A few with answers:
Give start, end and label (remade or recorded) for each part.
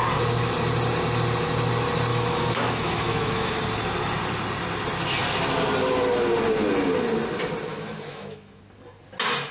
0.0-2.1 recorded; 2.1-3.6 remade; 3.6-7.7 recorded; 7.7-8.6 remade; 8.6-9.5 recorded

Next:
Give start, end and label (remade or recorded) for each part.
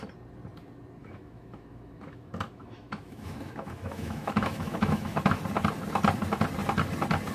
0.0-1.0 recorded; 1.0-5.4 remade; 5.4-7.3 recorded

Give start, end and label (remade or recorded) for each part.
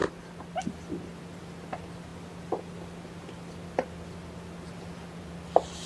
0.0-5.9 recorded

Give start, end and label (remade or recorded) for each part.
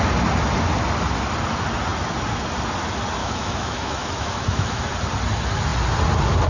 0.0-3.2 recorded; 3.2-4.8 remade; 4.8-6.5 recorded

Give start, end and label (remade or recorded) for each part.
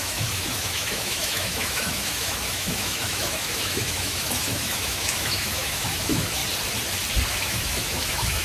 0.0-6.4 remade; 6.4-7.3 recorded; 7.3-8.4 remade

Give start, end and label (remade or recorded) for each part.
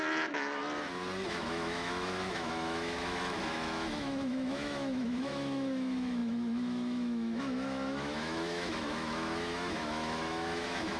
0.0-0.6 remade; 0.6-1.3 recorded; 1.3-11.0 remade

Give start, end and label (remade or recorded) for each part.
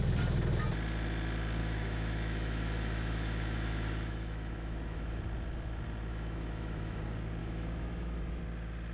0.0-1.6 recorded; 1.6-5.2 remade; 5.2-6.1 recorded; 6.1-7.0 remade; 7.0-7.4 recorded; 7.4-8.4 remade; 8.4-8.9 recorded